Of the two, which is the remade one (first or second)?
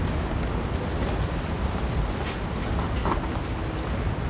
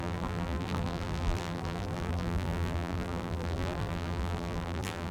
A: second